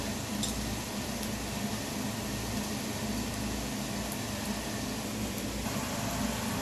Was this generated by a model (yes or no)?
no